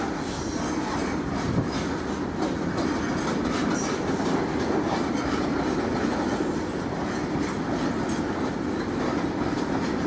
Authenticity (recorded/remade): recorded